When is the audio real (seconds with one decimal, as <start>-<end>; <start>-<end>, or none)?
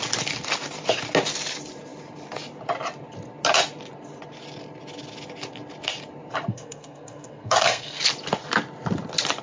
0.0-6.5; 8.0-9.4